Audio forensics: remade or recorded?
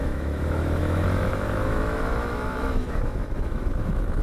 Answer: remade